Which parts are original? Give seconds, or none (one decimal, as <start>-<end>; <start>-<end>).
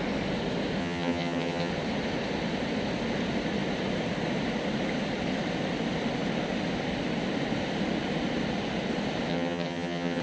0.0-0.8; 1.7-9.3